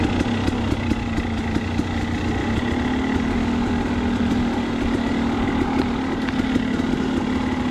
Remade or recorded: recorded